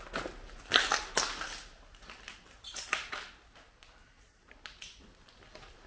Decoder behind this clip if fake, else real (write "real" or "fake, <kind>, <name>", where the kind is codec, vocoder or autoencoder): real